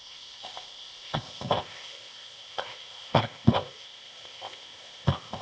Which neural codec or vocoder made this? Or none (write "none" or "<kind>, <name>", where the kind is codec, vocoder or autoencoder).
codec, ZipCodec